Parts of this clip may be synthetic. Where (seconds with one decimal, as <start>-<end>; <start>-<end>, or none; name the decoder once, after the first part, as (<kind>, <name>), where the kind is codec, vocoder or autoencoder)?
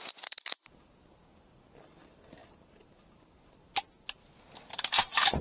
none